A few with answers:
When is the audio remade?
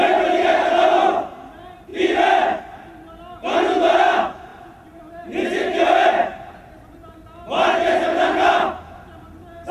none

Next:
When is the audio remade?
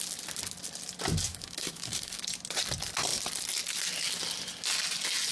1.3-2.2 (autoencoder, DAC-VAE)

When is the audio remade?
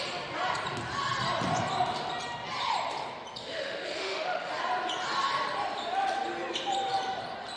3.4-4.5 (autoencoder, DAC-VAE)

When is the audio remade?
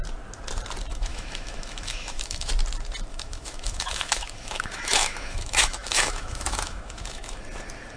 0.9-2.5 (autoencoder, DAC-VAE); 3.1-7.4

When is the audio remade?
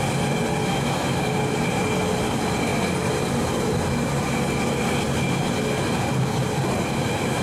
0.6-1.2 (autoencoder, DAC-VAE)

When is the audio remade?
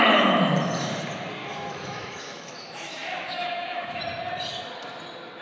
1.4-4.0 (autoencoder, DAC-VAE)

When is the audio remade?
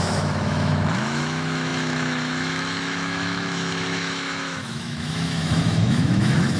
0.0-6.6 (autoencoder, DAC-VAE)